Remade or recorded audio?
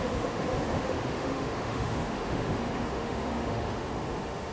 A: remade